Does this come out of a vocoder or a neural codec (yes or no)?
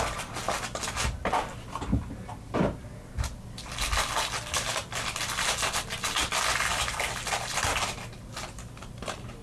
no